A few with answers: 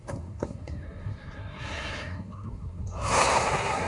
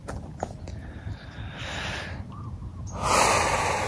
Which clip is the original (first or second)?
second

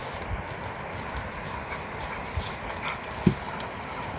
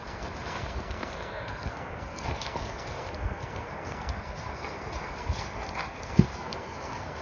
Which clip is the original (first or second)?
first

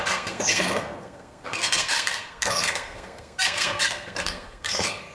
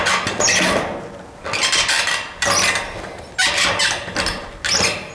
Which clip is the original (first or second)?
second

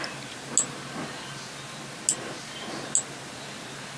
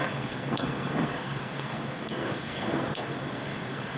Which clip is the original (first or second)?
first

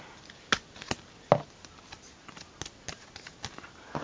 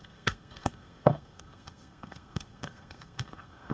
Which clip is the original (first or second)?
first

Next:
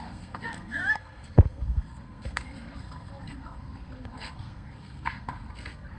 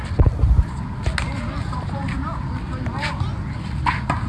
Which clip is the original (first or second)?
second